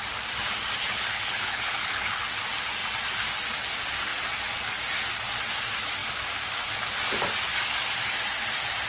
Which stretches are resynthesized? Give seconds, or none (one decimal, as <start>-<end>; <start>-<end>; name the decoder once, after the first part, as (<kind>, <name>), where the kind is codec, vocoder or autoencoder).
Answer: 0.8-2.2 (codec, HILCodec)